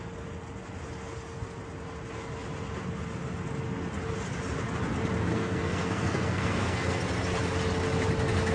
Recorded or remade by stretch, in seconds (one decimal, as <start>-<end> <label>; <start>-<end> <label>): 0.0-5.3 recorded; 5.3-7.0 remade; 7.0-8.5 recorded